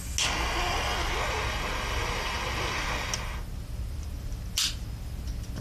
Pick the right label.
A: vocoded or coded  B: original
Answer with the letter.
B